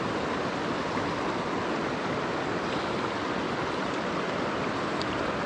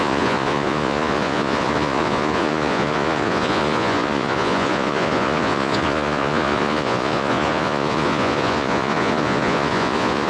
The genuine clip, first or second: first